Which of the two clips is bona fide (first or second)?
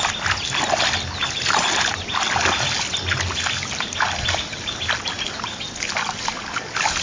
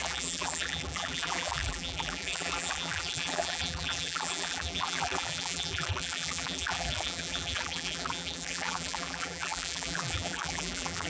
first